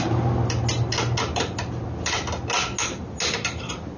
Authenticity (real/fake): real